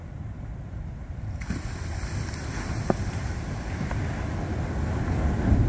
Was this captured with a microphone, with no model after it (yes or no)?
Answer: yes